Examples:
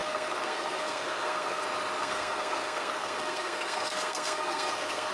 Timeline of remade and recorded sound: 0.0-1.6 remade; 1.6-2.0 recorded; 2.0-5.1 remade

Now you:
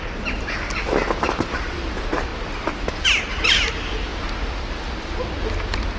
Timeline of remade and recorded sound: 0.0-6.0 recorded

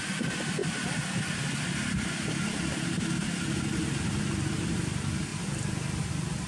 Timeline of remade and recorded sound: 0.0-6.5 recorded

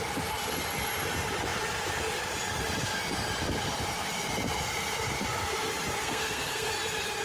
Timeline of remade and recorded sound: 0.0-6.0 recorded; 6.0-6.7 remade; 6.7-7.2 recorded

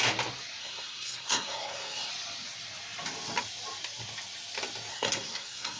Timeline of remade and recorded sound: 0.0-0.6 recorded; 0.6-2.1 remade; 2.1-4.9 recorded; 4.9-5.8 remade

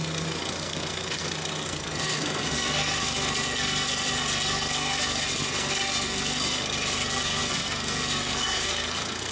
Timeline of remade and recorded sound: 0.0-9.3 remade

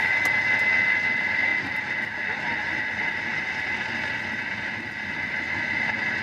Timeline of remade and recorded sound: 0.0-6.2 recorded